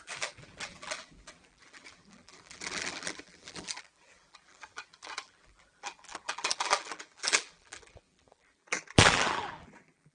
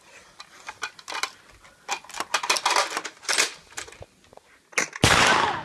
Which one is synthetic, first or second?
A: first